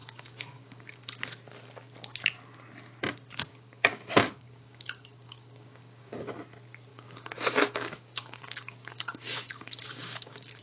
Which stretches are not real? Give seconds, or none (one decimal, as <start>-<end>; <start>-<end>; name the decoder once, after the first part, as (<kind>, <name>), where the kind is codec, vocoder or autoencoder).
0.0-1.0 (codec, DAC); 3.5-6.1; 6.9-10.6